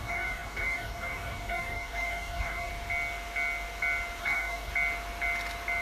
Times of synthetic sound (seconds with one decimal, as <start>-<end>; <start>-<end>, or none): 0.0-2.7; 4.2-4.7